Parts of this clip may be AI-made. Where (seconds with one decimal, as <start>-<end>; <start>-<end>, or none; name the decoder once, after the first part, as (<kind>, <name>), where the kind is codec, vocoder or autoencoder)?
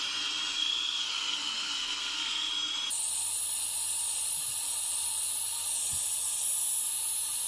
0.6-2.5 (codec, SNAC)